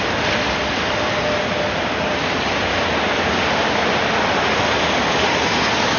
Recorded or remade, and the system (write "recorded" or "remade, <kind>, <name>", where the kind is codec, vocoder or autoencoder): recorded